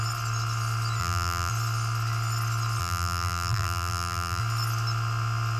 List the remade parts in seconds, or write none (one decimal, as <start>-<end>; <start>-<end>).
1.0-1.5; 2.8-4.4